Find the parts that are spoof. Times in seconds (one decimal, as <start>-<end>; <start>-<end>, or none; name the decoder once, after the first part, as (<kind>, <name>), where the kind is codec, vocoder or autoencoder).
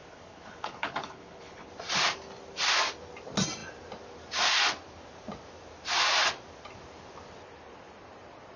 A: 0.0-1.7 (codec, HILCodec)